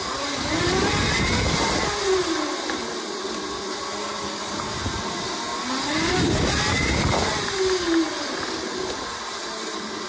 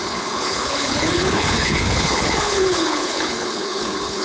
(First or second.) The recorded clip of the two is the first